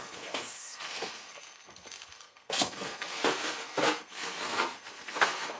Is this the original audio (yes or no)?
no